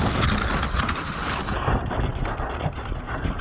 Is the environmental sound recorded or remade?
recorded